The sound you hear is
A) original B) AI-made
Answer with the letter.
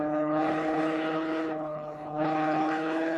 B